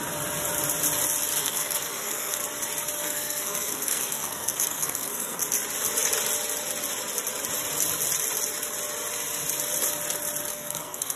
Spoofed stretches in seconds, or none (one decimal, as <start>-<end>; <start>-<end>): 1.4-2.4; 3.0-5.4; 10.5-11.2